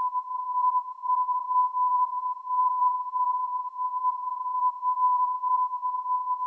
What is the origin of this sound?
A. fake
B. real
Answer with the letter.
A